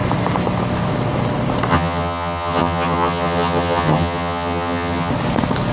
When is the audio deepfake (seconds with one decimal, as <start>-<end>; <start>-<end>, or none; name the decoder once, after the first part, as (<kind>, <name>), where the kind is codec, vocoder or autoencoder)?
1.7-5.1 (vocoder, HiFi-GAN)